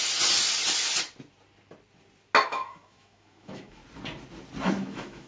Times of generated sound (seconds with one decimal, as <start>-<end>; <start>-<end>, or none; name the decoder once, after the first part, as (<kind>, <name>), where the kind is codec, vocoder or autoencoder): 2.5-3.8 (autoencoder, DAC-VAE); 4.6-5.3

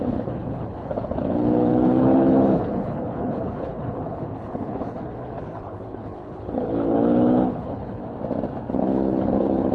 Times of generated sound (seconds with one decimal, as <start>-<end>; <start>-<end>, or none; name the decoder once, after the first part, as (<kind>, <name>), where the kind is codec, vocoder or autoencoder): 0.0-8.0 (codec, HILCodec); 8.7-9.7

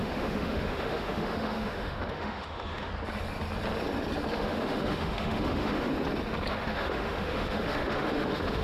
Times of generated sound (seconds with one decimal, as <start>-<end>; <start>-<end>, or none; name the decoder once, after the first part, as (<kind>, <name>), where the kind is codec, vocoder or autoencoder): 0.0-2.9 (autoencoder, DAC-VAE); 4.3-5.9; 6.5-8.6

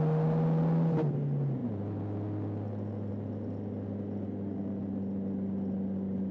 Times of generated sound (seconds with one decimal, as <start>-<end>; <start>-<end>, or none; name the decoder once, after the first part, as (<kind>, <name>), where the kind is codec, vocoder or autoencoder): none

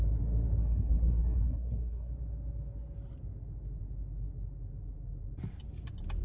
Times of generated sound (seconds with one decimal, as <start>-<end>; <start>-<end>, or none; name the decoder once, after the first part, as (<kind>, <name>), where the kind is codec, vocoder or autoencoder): 0.6-2.1 (codec, SNAC)

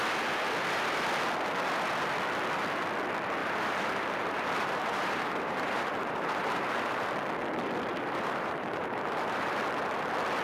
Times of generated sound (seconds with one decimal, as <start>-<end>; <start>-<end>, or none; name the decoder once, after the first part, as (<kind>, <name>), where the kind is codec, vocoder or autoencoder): 3.4-7.1 (vocoder, BigVGAN v2); 7.9-9.6

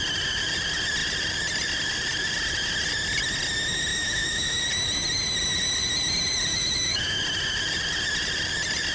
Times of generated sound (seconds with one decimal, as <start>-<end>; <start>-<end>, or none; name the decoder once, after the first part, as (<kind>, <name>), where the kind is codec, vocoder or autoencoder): 3.9-4.6 (autoencoder, DAC-VAE); 6.5-7.2

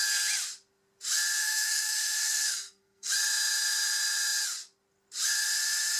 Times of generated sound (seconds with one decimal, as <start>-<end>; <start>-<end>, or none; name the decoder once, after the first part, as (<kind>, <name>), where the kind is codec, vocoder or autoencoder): 1.4-3.1 (codec, SNAC)